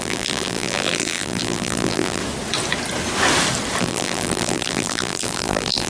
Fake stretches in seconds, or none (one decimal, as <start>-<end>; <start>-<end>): 0.0-2.2; 3.8-5.9